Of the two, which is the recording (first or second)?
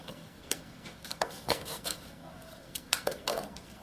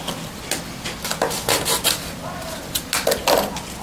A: second